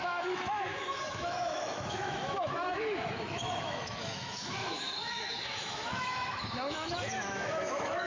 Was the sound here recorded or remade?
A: remade